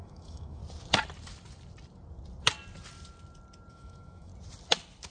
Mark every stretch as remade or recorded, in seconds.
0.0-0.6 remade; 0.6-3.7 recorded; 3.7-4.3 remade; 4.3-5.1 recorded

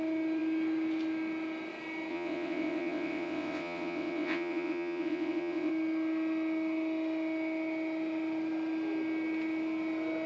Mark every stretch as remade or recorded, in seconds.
0.0-2.1 recorded; 2.1-5.7 remade; 5.7-10.3 recorded

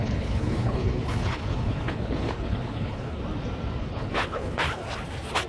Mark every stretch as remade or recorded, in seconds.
0.0-3.2 remade; 3.2-3.8 recorded; 3.8-4.8 remade; 4.8-5.5 recorded